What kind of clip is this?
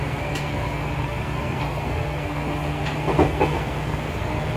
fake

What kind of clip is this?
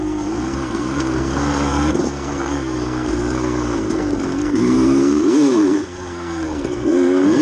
fake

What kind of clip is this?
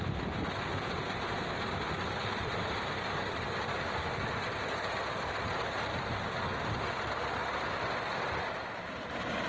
real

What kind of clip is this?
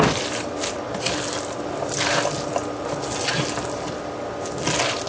real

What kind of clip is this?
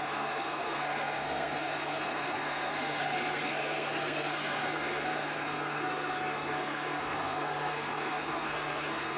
fake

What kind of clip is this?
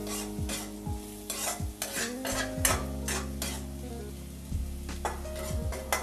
real